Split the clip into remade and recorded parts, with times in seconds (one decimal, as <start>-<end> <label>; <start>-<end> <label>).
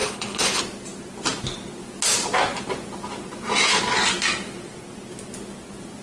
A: 0.0-0.6 remade; 0.6-6.0 recorded